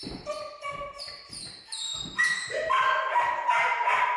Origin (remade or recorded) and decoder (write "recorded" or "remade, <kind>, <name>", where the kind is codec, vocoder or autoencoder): remade, vocoder, BigVGAN v2